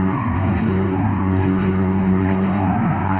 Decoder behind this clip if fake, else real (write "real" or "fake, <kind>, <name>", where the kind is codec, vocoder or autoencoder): fake, codec, SNAC